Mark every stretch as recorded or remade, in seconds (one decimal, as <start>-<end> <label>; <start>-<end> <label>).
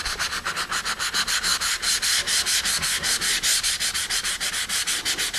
0.0-5.4 recorded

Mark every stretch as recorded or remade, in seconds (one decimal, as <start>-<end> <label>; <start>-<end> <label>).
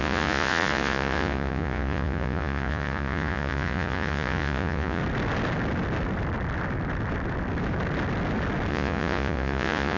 0.0-5.0 remade; 5.0-8.7 recorded; 8.7-10.0 remade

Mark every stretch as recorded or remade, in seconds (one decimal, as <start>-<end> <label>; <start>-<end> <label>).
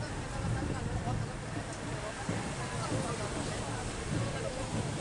0.0-5.0 recorded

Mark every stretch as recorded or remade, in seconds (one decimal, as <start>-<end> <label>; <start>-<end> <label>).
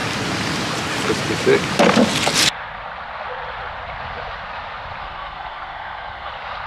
0.0-5.0 recorded; 5.0-6.3 remade; 6.3-6.7 recorded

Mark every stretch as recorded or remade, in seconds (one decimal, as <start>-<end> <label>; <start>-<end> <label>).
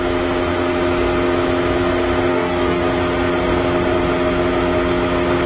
0.0-2.3 recorded; 2.3-2.8 remade; 2.8-5.5 recorded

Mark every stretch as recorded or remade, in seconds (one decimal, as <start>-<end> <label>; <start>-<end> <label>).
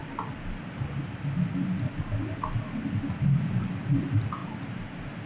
0.0-5.3 recorded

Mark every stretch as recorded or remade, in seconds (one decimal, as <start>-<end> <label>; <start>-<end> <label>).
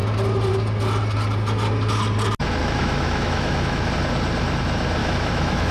0.0-2.6 recorded; 2.6-3.9 remade; 3.9-5.0 recorded; 5.0-5.7 remade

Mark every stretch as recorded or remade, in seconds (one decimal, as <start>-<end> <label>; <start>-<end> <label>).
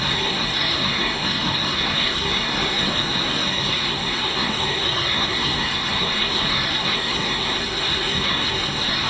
0.0-9.1 remade